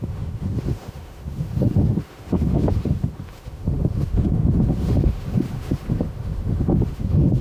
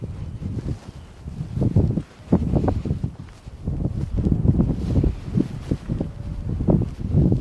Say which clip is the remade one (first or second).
first